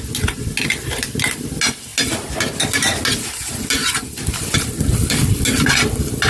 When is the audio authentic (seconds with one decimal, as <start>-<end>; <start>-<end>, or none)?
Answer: 0.0-6.3